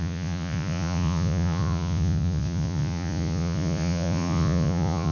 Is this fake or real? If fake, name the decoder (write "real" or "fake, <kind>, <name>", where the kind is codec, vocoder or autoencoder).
fake, vocoder, Vocos